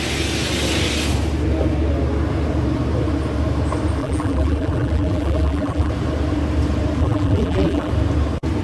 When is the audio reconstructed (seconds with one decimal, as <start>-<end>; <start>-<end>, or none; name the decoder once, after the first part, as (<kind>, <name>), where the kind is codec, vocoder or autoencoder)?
4.0-5.9 (vocoder, BigVGAN v2); 7.0-7.9